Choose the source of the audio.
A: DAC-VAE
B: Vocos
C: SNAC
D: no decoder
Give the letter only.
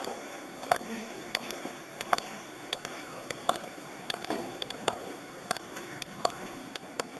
C